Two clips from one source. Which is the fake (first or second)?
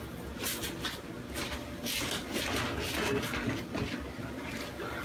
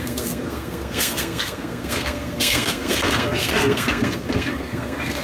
second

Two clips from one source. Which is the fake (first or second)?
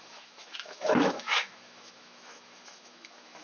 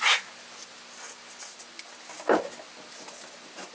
first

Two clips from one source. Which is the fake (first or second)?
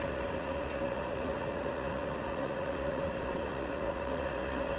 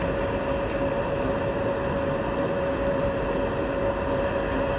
first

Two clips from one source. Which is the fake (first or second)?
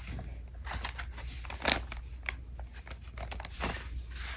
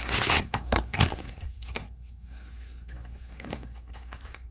second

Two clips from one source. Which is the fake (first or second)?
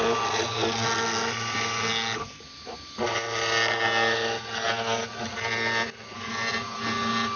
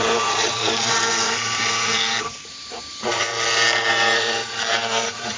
second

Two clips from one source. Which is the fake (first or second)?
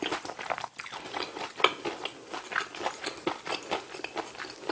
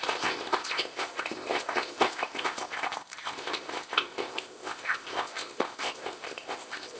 second